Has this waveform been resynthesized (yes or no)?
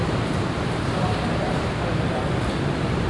yes